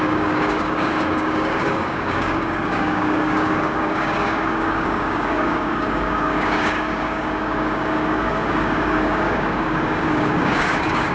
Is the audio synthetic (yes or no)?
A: yes